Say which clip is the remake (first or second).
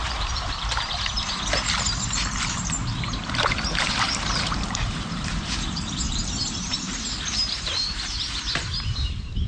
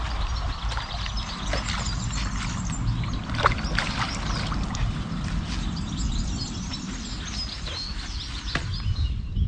first